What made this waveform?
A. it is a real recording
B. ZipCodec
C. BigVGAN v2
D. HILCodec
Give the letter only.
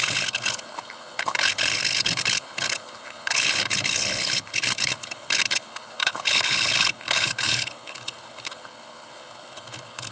D